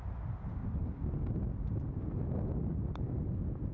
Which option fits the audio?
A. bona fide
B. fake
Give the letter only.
A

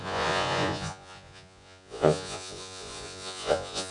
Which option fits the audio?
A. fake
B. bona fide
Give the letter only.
A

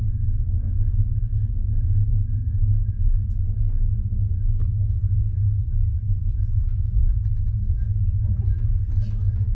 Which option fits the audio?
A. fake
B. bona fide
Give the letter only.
B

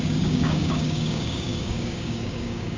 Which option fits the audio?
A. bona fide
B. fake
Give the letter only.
B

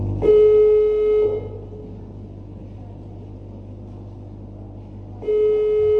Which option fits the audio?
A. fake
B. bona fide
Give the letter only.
B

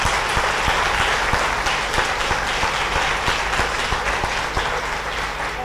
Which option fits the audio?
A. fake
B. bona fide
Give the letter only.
B